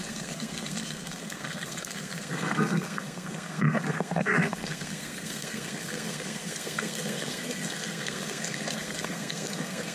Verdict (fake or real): fake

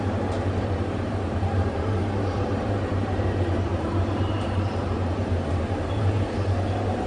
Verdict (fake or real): fake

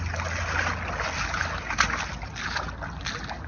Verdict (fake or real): real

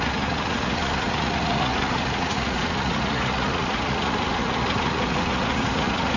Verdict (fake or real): fake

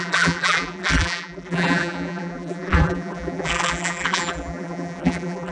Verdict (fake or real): fake